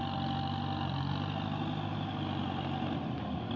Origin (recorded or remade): recorded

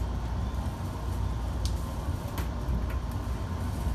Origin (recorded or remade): recorded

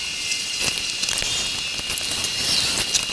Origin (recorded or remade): recorded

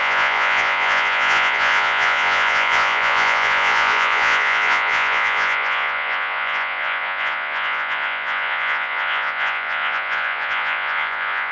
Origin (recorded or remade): remade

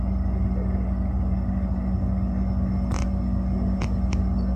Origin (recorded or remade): recorded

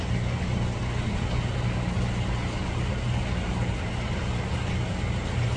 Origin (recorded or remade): recorded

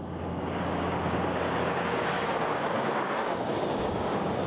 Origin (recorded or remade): remade